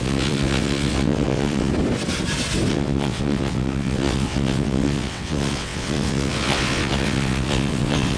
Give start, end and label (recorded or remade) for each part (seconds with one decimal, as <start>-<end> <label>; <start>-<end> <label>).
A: 0.0-1.7 remade; 1.7-2.7 recorded; 2.7-8.2 remade

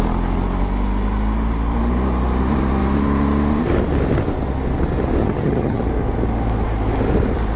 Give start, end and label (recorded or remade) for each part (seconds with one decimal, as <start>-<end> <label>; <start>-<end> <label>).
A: 0.0-5.2 recorded; 5.2-5.8 remade; 5.8-7.6 recorded

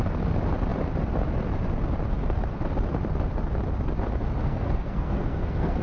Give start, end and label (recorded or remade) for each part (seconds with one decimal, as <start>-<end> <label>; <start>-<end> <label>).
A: 0.0-4.4 recorded; 4.4-5.8 remade

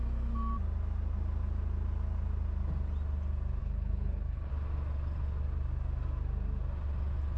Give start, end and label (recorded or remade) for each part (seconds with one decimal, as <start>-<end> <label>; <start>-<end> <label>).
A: 0.0-3.6 recorded; 3.6-4.5 remade; 4.5-7.4 recorded

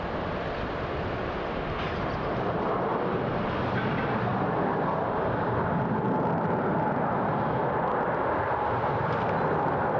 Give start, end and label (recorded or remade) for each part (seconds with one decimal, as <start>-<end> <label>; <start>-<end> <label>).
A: 0.0-10.0 recorded

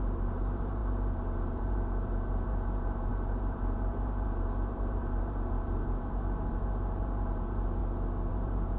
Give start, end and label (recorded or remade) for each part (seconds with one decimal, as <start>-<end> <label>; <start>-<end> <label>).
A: 0.0-7.8 remade; 7.8-8.3 recorded; 8.3-8.8 remade

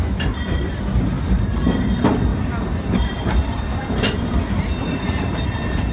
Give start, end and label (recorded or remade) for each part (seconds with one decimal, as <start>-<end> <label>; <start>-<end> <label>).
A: 0.0-2.3 recorded; 2.3-5.9 remade

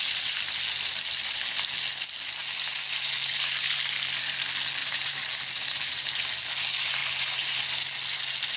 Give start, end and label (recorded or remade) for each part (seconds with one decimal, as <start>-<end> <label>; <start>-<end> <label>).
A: 0.0-4.8 recorded; 4.8-6.5 remade; 6.5-7.0 recorded; 7.0-7.6 remade; 7.6-8.6 recorded